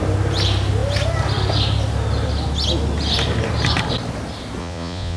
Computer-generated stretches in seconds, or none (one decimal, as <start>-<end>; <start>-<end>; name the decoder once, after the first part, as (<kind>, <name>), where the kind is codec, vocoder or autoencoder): 4.6-5.2 (vocoder, Vocos)